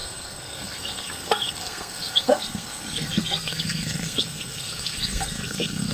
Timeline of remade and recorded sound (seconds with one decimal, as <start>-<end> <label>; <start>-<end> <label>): 0.0-5.9 remade